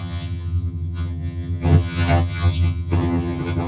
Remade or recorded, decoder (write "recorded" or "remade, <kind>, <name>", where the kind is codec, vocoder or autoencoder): remade, vocoder, HiFi-GAN